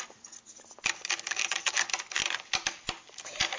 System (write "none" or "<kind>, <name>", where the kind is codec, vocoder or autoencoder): none